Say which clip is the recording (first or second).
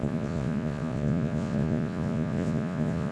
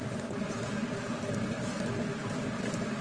second